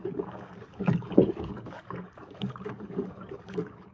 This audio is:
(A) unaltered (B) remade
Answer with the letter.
B